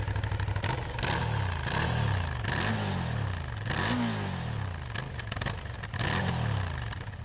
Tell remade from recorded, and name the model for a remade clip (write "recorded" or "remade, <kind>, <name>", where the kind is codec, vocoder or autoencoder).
recorded